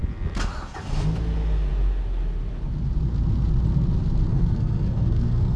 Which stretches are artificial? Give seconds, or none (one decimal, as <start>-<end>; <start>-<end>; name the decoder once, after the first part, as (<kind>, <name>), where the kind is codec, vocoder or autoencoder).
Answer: 4.3-5.6 (codec, SNAC)